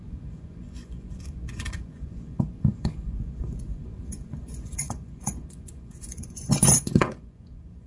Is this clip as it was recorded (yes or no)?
no